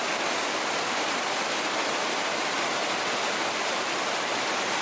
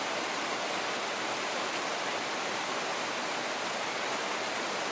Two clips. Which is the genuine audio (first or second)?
second